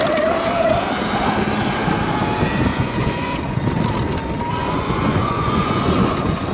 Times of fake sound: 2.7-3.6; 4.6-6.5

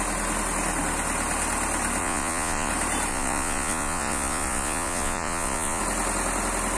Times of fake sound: 2.0-2.7; 3.1-5.8

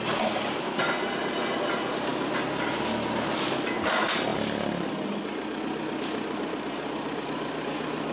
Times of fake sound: none

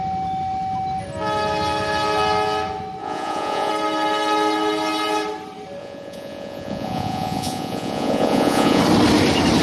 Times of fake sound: 3.0-3.7; 5.8-8.8